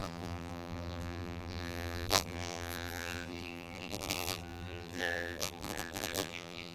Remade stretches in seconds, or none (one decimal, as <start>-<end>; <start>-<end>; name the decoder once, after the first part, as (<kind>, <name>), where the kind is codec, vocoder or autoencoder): 0.0-6.7 (vocoder, BigVGAN v2)